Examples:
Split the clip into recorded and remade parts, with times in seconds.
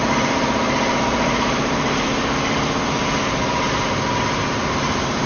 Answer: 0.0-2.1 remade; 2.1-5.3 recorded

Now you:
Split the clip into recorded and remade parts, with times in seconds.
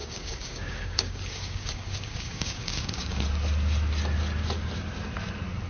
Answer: 0.0-3.2 remade; 3.2-5.7 recorded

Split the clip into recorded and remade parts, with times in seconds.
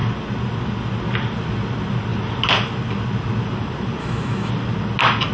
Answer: 0.0-4.0 recorded; 4.0-4.5 remade; 4.5-5.3 recorded